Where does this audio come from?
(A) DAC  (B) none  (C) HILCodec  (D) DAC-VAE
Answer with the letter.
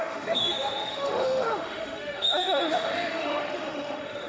D